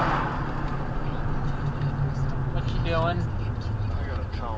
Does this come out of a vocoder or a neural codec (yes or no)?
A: no